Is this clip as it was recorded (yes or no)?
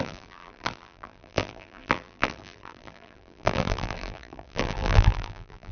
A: no